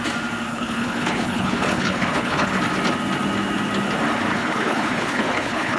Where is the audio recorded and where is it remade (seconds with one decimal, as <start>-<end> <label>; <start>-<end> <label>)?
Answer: 0.0-0.5 recorded; 0.5-2.6 remade; 2.6-4.3 recorded; 4.3-5.8 remade